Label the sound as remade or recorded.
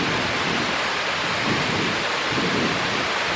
recorded